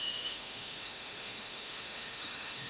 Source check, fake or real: fake